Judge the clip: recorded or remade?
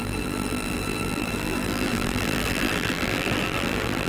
remade